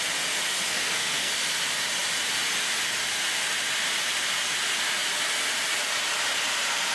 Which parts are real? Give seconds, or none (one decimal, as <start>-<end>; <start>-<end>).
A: 0.0-0.7; 1.3-6.9